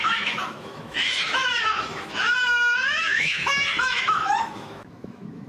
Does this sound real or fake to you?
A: fake